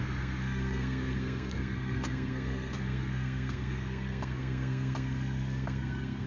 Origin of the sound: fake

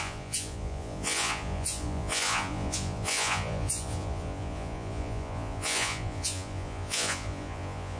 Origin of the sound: fake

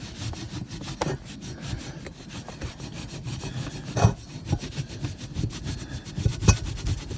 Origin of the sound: real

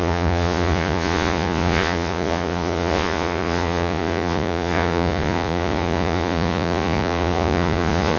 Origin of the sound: fake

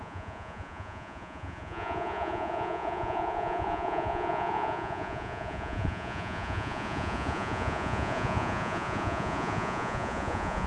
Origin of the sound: fake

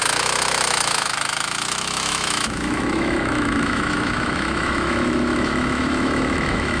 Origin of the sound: fake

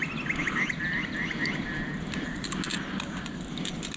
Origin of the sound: real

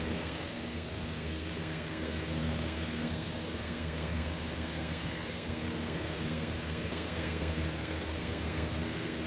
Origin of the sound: fake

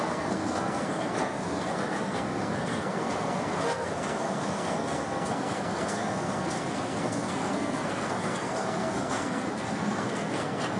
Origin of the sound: fake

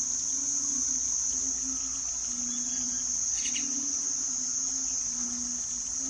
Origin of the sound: real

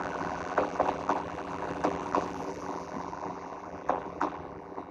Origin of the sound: fake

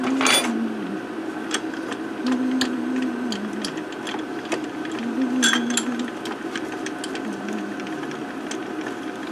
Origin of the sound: real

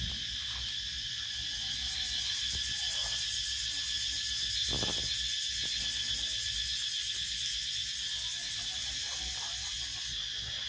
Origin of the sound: real